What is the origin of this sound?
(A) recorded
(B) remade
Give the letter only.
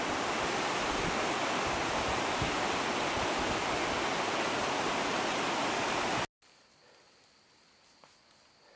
A